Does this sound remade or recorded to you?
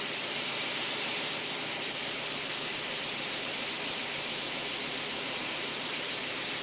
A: remade